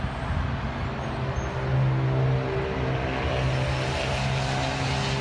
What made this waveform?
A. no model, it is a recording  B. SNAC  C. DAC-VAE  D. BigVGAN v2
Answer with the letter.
A